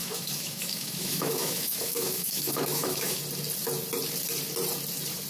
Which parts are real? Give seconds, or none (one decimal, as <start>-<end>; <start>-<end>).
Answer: 3.2-5.3